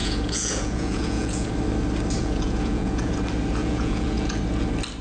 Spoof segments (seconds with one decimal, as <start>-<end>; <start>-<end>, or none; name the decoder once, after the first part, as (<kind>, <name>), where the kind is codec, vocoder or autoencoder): 0.0-1.5 (vocoder, Vocos); 2.2-3.1; 3.6-4.4